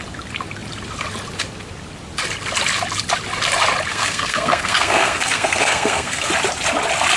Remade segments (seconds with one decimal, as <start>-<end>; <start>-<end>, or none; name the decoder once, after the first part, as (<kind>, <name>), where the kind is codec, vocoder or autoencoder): 3.9-6.3 (codec, SNAC)